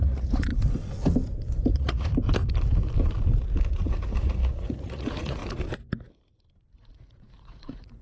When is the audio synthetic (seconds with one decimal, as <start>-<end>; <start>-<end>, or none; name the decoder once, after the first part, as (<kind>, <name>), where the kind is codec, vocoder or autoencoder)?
0.0-0.5 (vocoder, Vocos); 1.7-2.1; 3.7-5.4; 6.8-8.0